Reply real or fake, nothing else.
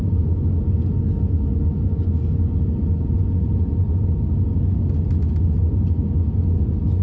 real